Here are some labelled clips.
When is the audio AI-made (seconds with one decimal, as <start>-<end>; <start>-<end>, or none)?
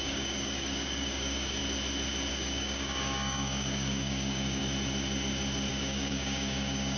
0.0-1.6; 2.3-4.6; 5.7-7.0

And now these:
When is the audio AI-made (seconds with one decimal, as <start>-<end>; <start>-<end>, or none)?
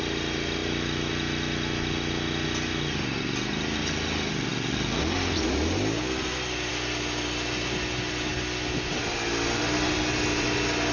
none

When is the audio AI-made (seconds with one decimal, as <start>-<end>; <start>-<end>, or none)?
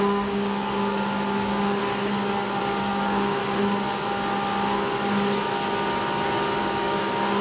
0.0-1.8; 2.6-3.4; 6.6-7.4